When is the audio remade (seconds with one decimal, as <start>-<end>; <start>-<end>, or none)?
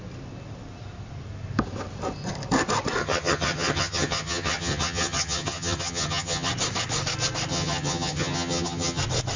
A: 3.0-6.5; 7.5-9.0